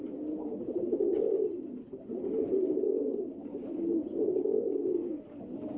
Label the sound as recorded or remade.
recorded